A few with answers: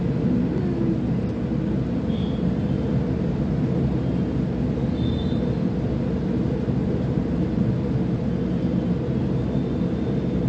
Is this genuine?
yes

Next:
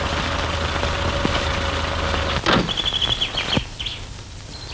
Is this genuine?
yes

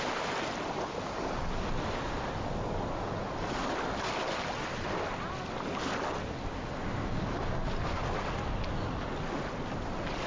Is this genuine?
yes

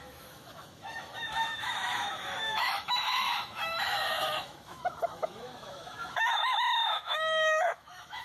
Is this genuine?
no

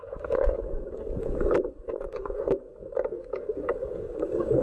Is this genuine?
no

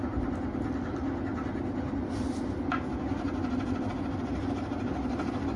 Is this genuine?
yes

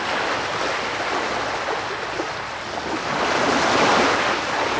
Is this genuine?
yes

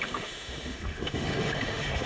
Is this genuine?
no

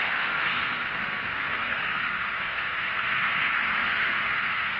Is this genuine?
no